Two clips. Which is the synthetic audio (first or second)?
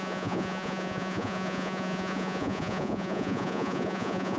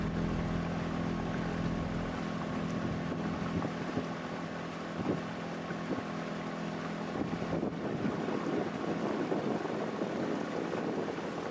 first